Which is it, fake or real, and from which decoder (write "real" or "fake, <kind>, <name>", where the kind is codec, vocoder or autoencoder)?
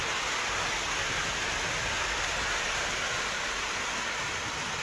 real